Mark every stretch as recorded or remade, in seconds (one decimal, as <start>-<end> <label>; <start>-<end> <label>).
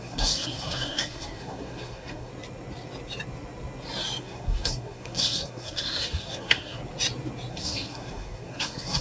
0.0-2.3 remade; 2.3-4.2 recorded; 4.2-6.8 remade; 6.8-7.5 recorded; 7.5-9.0 remade